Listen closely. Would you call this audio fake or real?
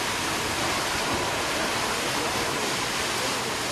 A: real